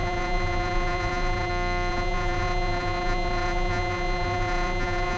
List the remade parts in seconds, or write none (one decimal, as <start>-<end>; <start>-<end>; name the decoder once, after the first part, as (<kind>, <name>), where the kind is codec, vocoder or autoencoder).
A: 0.0-1.5 (vocoder, Vocos); 1.9-5.2